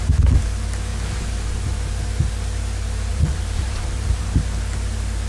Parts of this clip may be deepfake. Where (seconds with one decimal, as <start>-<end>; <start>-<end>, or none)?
3.1-4.2